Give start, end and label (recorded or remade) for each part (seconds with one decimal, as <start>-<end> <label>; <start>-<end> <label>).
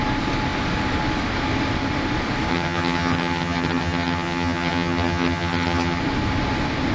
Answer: 0.0-2.5 recorded; 2.5-6.0 remade; 6.0-6.9 recorded